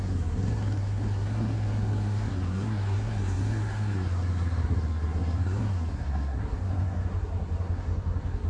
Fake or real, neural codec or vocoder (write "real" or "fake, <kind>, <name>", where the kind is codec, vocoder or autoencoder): fake, codec, SNAC